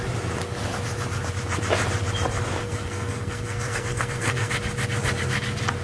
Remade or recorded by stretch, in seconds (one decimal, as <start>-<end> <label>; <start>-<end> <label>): 0.0-2.6 recorded; 2.6-4.5 remade; 4.5-5.8 recorded